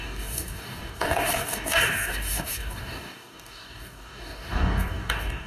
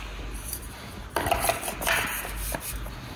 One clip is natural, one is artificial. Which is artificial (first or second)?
first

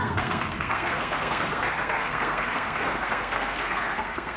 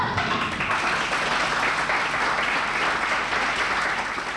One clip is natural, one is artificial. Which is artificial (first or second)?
first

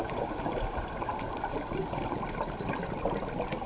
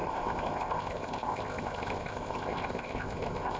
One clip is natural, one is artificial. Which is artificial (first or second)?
second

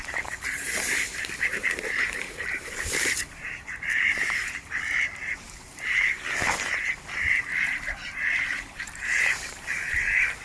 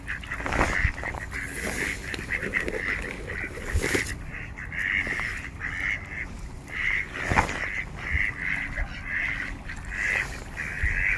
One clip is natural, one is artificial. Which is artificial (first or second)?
first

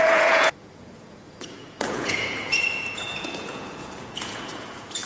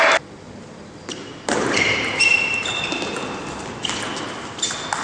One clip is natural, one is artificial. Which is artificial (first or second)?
first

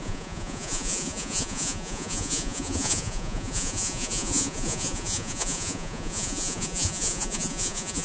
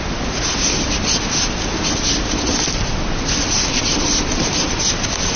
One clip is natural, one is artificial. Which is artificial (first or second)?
first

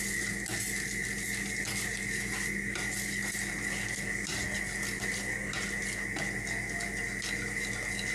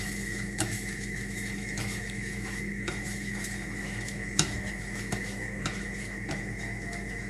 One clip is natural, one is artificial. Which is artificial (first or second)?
second